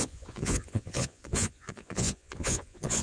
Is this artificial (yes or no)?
yes